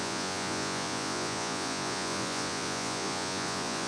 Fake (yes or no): yes